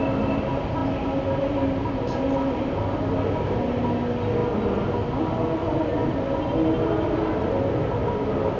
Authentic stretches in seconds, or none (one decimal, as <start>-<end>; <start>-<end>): 0.0-8.6